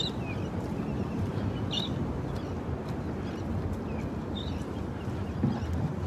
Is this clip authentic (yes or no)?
yes